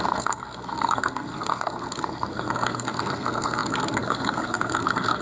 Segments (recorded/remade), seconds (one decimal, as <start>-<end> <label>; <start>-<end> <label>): 0.0-5.2 remade